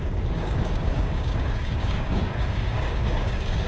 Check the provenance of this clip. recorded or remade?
remade